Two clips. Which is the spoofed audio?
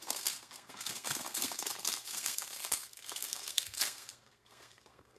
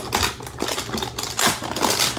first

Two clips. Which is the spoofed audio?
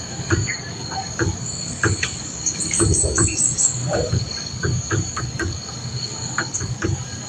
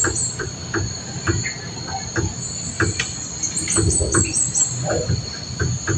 first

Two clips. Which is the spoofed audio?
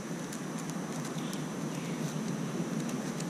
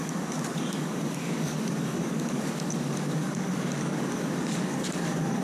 second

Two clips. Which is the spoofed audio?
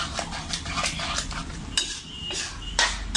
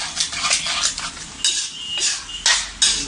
first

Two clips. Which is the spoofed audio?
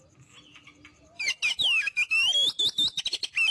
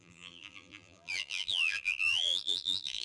second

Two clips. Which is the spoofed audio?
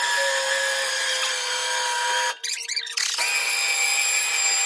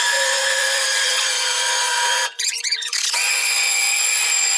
second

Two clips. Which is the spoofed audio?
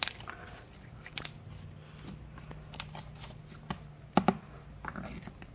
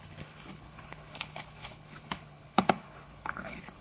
second